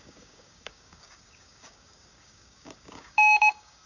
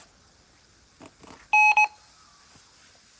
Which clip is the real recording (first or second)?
second